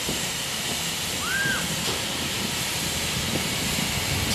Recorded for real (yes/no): yes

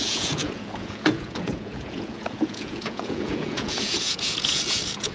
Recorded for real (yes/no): no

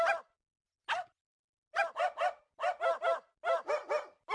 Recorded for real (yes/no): yes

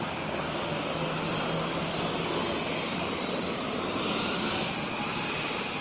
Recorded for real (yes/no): yes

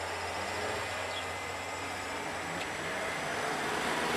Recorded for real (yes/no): yes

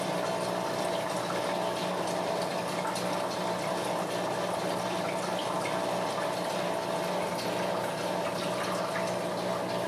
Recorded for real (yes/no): yes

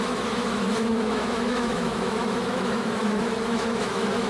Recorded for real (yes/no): no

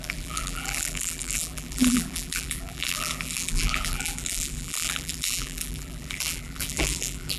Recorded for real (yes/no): no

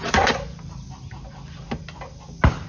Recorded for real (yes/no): yes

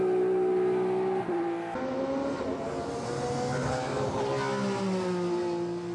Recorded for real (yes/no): yes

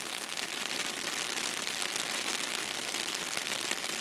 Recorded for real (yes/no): yes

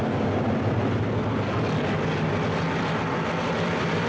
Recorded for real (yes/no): yes